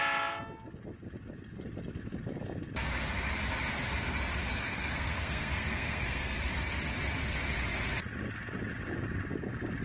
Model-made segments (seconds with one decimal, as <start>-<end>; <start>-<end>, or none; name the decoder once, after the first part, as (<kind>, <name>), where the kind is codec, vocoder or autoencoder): 4.5-6.4 (codec, SNAC)